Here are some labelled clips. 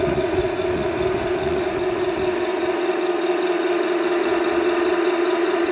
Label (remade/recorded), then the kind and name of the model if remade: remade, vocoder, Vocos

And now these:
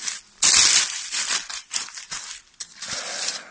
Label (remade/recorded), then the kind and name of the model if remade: recorded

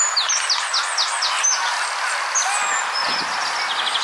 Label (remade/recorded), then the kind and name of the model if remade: recorded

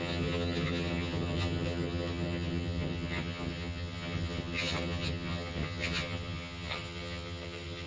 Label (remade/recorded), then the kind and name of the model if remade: remade, vocoder, HiFi-GAN